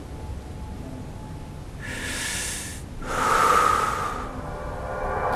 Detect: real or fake real